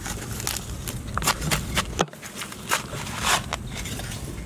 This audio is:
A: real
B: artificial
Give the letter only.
A